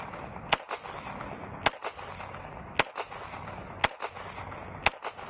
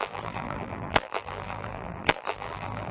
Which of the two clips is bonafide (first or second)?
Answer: first